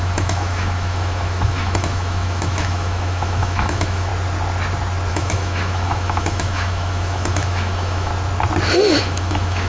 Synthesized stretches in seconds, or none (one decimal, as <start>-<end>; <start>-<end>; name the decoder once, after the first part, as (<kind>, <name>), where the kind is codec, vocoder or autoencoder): 0.0-4.1 (autoencoder, DAC-VAE); 5.1-8.1; 9.0-9.7